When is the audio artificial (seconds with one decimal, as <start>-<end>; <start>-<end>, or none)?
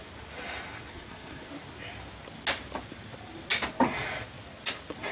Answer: 0.9-1.5